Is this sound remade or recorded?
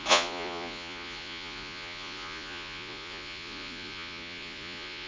remade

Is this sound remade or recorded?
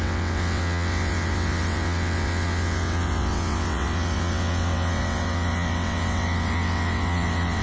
remade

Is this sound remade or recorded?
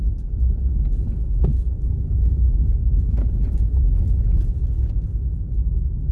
recorded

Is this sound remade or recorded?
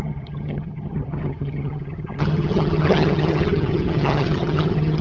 remade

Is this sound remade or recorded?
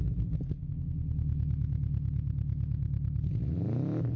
recorded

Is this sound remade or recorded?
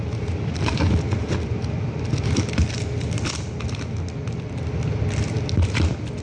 recorded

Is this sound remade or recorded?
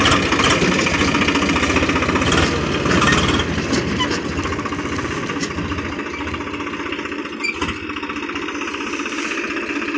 recorded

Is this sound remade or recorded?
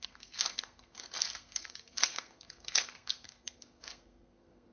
remade